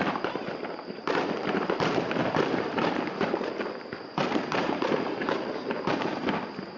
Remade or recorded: remade